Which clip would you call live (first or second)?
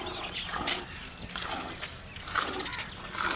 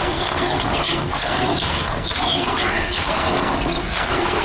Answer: first